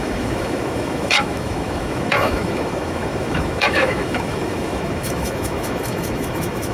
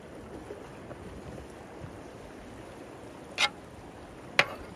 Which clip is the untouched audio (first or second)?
second